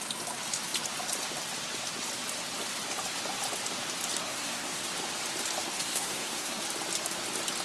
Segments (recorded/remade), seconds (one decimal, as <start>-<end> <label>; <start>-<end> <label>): 0.0-4.2 recorded; 4.2-4.8 remade; 4.8-5.7 recorded; 5.7-6.6 remade; 6.6-7.6 recorded